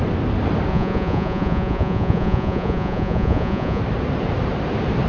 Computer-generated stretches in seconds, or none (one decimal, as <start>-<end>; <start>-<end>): 0.7-3.8